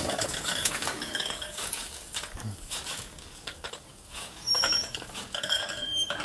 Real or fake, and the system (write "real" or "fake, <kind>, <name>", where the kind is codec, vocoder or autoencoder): fake, codec, DAC